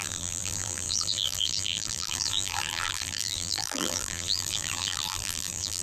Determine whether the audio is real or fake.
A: fake